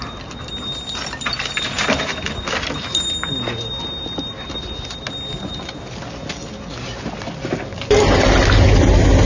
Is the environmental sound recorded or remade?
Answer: recorded